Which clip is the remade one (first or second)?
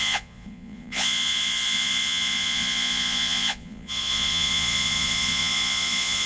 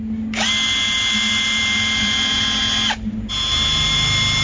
first